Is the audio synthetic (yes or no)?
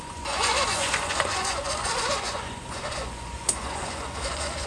yes